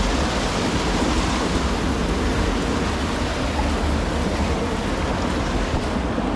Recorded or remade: recorded